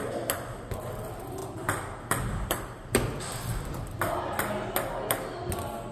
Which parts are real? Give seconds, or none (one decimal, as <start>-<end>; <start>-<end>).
0.0-1.4; 4.2-5.9